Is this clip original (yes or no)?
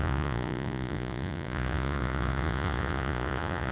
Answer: no